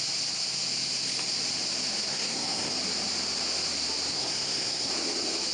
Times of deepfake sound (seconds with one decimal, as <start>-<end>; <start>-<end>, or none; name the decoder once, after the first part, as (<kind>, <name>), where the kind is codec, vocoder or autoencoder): 2.1-2.7 (codec, SNAC); 4.1-4.9